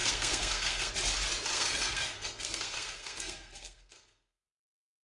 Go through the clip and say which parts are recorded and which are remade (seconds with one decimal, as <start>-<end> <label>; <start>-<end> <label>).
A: 0.0-0.9 remade; 0.9-1.5 recorded; 1.5-4.5 remade; 4.5-5.0 recorded